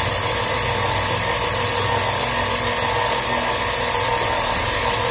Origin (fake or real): real